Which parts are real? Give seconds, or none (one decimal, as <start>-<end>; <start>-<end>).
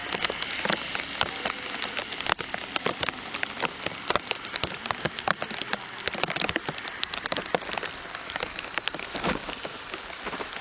0.0-10.6